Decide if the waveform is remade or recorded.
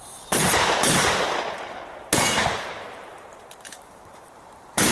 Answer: remade